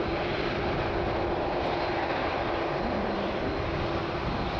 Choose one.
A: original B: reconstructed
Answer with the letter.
A